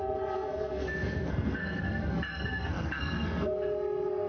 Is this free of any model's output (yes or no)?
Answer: no